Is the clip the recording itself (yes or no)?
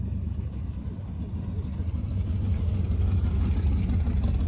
no